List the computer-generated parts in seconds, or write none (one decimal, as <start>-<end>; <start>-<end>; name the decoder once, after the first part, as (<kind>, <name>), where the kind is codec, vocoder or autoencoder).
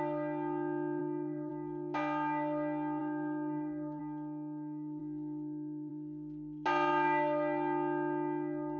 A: 1.0-1.5 (codec, DAC); 3.0-4.0